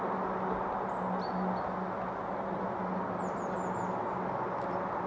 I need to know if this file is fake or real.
real